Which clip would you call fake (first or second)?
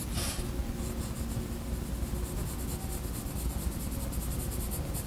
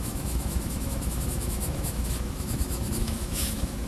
second